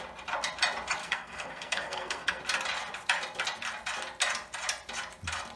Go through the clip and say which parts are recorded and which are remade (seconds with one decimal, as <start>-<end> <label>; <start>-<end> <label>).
0.0-1.0 recorded; 1.0-2.4 remade; 2.4-5.6 recorded